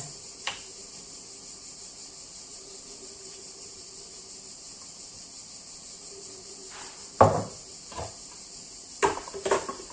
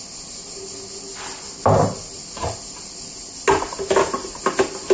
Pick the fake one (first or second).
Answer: first